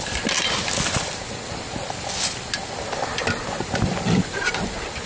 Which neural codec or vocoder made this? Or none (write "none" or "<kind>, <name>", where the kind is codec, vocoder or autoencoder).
none